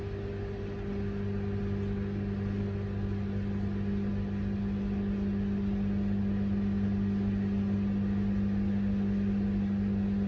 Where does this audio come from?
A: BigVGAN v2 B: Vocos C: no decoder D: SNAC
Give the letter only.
C